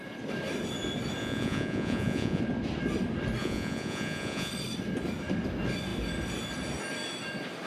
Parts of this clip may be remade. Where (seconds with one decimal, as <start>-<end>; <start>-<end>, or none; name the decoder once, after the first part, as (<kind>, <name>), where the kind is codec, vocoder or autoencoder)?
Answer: 1.2-2.4 (vocoder, Vocos); 3.4-4.5